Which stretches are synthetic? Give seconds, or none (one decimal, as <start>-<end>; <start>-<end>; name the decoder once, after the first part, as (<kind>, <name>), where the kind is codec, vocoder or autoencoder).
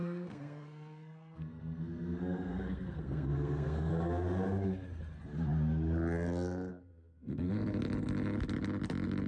0.0-3.9 (codec, SNAC); 6.7-7.5